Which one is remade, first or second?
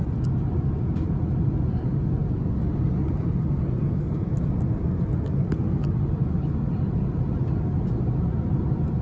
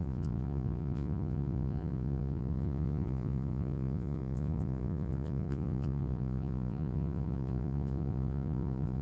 second